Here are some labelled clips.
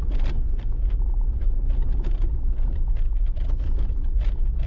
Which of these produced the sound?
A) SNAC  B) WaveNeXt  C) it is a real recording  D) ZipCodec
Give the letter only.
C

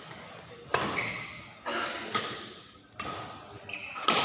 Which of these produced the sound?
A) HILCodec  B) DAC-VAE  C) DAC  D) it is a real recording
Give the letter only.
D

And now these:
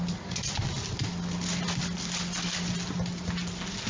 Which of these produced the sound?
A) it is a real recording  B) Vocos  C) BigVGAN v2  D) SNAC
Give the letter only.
A